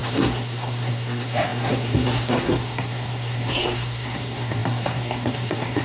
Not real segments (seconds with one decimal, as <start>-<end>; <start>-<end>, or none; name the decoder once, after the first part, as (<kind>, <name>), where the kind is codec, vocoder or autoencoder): 0.0-5.8 (codec, SNAC)